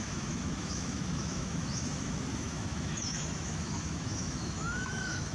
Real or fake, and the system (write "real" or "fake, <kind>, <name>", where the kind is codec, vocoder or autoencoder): fake, autoencoder, DAC-VAE